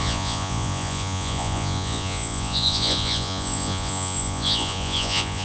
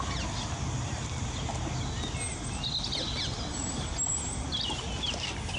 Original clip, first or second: second